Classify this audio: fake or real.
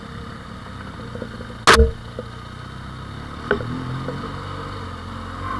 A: real